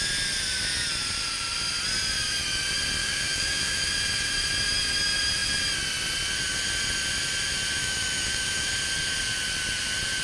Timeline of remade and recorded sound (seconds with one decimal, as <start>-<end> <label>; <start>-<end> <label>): 0.0-3.0 recorded; 3.0-3.9 remade; 3.9-7.8 recorded; 7.8-8.7 remade; 8.7-10.2 recorded